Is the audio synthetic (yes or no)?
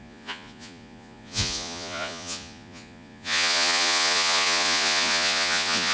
yes